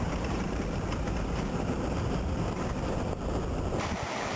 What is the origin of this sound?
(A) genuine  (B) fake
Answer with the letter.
A